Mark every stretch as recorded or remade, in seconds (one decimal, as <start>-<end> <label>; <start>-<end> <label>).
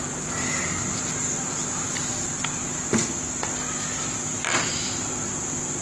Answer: 0.0-5.8 recorded